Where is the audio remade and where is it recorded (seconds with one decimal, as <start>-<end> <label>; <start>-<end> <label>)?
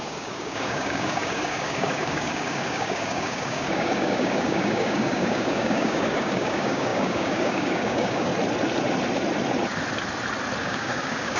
0.0-8.3 remade; 8.3-10.6 recorded; 10.6-11.4 remade